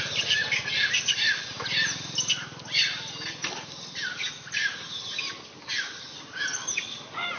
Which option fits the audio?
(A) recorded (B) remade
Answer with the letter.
A